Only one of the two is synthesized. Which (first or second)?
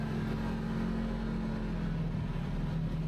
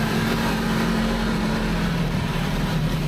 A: second